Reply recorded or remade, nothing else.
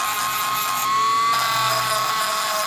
recorded